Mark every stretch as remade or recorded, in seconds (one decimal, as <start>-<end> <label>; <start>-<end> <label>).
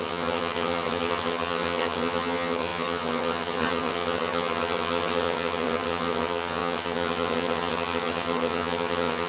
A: 0.0-9.3 remade